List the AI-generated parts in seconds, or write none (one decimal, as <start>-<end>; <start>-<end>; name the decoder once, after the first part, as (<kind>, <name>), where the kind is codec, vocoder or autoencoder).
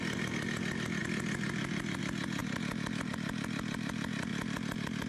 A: none